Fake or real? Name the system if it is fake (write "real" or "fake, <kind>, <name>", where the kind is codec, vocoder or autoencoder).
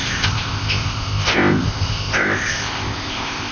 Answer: fake, codec, ZipCodec